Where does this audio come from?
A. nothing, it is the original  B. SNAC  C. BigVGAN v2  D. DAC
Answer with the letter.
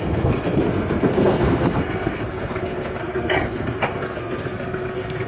B